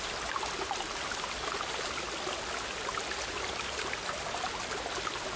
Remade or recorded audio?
recorded